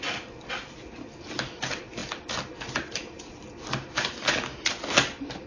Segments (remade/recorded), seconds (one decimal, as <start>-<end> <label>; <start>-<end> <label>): 0.0-5.5 recorded